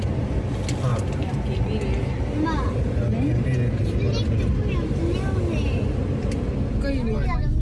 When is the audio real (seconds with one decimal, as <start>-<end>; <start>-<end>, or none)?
0.0-7.6